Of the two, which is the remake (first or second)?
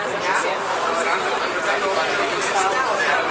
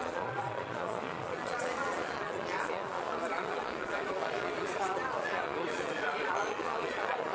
second